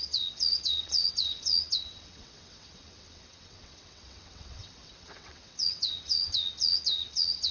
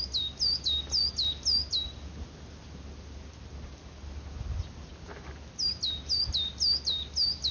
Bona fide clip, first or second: second